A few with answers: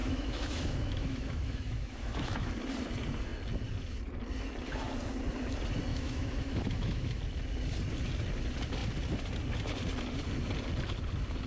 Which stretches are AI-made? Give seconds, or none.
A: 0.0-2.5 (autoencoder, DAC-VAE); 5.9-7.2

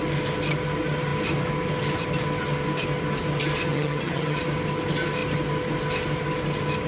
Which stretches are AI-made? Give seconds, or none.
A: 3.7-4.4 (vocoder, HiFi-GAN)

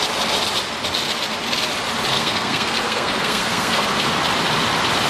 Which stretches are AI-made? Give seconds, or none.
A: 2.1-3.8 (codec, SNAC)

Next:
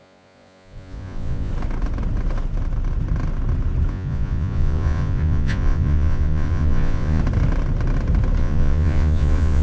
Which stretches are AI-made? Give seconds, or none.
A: 0.0-1.5 (vocoder, Vocos); 3.9-7.2; 8.4-9.6

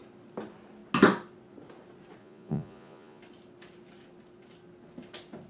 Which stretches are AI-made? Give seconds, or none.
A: 2.2-3.2 (vocoder, Vocos)